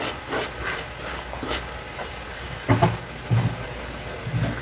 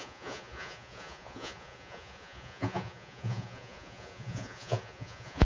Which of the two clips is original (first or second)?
first